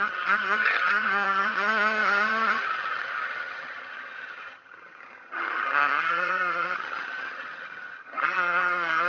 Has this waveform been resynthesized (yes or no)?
yes